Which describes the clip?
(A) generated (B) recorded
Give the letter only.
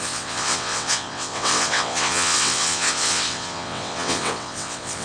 A